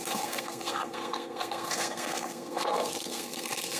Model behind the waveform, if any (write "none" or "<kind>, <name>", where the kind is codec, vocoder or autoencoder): codec, SNAC